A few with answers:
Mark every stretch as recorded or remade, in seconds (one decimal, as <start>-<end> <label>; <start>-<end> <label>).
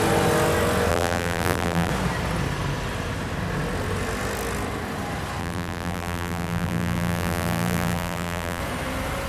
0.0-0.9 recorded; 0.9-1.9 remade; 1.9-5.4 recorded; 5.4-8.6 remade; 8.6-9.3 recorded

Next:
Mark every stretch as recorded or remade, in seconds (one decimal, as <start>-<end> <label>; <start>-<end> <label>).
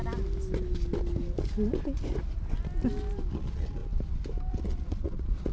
0.0-3.3 recorded; 3.3-3.8 remade; 3.8-4.5 recorded; 4.5-5.5 remade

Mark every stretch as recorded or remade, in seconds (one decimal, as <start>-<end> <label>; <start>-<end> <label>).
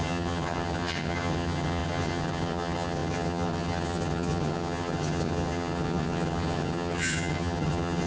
0.0-8.1 remade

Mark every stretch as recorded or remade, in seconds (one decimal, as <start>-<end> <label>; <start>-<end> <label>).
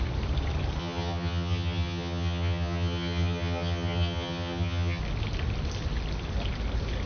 0.0-0.8 recorded; 0.8-5.0 remade; 5.0-7.1 recorded